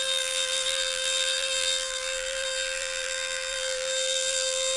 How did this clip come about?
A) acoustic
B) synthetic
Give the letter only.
B